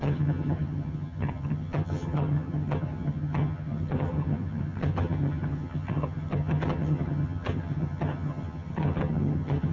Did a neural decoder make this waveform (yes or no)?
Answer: yes